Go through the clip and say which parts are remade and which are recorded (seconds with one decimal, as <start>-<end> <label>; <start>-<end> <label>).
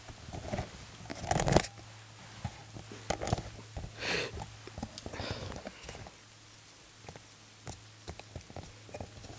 0.0-9.4 recorded